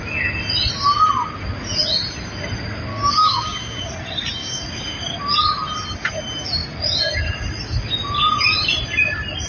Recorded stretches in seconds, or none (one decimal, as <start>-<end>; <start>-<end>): 0.0-2.9; 3.9-4.4; 5.0-9.5